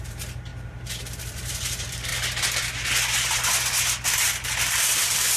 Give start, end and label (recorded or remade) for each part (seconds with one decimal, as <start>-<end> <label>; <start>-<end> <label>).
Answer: 0.0-2.1 remade; 2.1-4.7 recorded; 4.7-5.4 remade

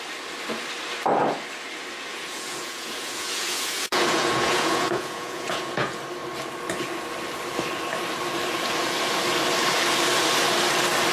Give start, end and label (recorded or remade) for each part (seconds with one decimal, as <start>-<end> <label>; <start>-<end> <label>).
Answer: 0.0-2.1 recorded; 2.1-5.9 remade; 5.9-11.1 recorded